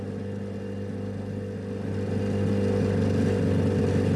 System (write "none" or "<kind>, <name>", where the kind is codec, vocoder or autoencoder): none